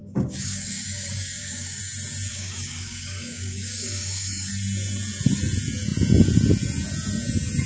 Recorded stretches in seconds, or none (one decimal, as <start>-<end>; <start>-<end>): 1.8-2.3; 4.5-7.7